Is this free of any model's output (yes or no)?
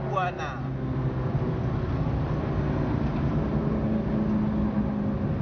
yes